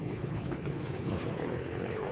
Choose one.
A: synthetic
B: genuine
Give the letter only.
A